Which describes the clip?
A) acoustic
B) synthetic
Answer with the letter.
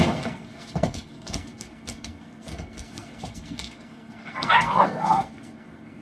B